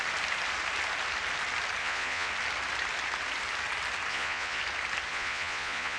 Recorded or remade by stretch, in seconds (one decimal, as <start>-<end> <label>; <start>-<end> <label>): 0.0-1.8 recorded; 1.8-2.3 remade; 2.3-4.1 recorded; 4.1-4.6 remade; 4.6-5.1 recorded; 5.1-6.0 remade